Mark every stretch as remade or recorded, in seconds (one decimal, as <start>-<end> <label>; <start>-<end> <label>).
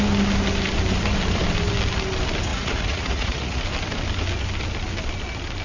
0.0-2.5 recorded; 2.5-3.6 remade; 3.6-5.6 recorded